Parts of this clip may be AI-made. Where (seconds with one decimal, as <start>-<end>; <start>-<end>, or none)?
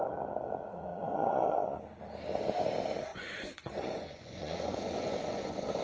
0.9-1.8; 3.1-5.8